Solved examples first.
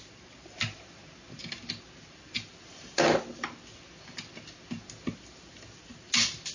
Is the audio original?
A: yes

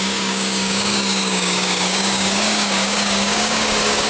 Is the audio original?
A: no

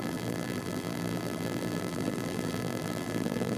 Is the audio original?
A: no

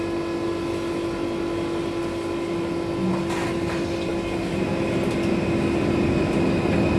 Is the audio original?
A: yes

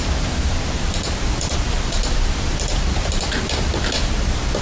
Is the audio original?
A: no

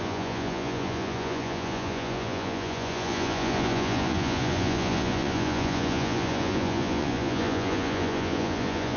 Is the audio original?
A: no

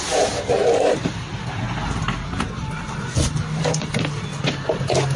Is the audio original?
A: yes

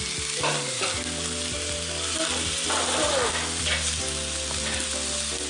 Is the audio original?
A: yes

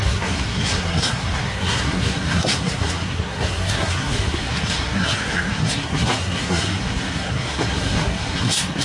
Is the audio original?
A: no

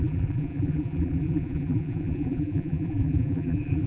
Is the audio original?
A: no